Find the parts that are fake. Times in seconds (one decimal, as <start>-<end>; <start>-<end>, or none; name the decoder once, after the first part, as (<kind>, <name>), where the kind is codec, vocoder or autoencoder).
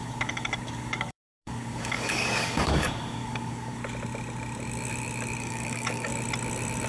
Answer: 0.0-3.8 (codec, DAC); 5.4-6.1